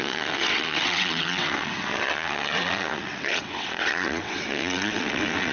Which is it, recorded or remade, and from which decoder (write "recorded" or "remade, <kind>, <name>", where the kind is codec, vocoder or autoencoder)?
remade, vocoder, WaveNeXt